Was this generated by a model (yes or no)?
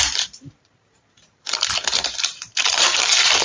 yes